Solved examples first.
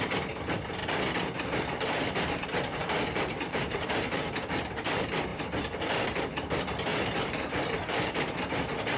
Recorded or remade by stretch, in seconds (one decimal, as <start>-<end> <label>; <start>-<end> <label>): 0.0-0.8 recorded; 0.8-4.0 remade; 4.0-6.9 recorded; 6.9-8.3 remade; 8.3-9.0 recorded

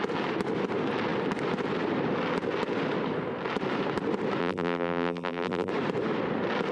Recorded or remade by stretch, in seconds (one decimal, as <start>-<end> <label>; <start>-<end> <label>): 0.0-4.4 recorded; 4.4-5.7 remade; 5.7-6.7 recorded

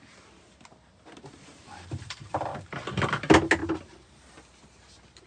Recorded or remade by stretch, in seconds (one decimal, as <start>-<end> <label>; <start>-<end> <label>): 0.0-1.5 recorded; 1.5-2.8 remade; 2.8-5.3 recorded

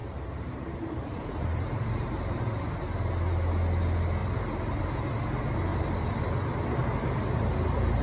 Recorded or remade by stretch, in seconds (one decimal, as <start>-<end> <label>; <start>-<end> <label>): 0.0-2.4 remade; 2.4-4.2 recorded; 4.2-4.8 remade; 4.8-5.7 recorded; 5.7-6.2 remade; 6.2-8.0 recorded